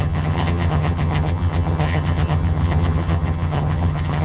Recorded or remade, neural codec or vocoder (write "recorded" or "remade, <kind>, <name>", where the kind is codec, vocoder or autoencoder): remade, vocoder, HiFi-GAN